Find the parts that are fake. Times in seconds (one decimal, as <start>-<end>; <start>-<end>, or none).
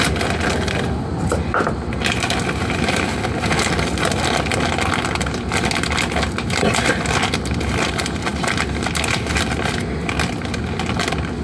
none